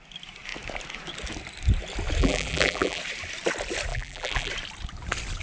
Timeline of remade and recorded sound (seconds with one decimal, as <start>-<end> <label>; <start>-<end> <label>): 0.0-2.2 recorded; 2.2-3.0 remade; 3.0-3.9 recorded; 3.9-4.5 remade; 4.5-5.4 recorded